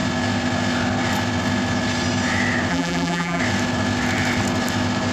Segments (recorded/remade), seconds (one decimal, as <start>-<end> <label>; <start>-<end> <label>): 0.0-2.7 recorded; 2.7-3.4 remade; 3.4-5.1 recorded